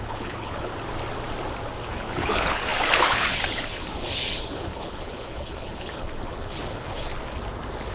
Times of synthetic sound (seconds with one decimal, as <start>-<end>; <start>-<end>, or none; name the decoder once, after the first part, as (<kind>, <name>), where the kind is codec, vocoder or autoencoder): 0.0-0.7 (codec, HILCodec); 1.9-7.1